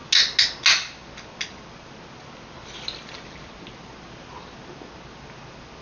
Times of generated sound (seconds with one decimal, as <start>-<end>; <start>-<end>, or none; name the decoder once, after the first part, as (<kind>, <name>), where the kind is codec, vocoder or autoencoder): none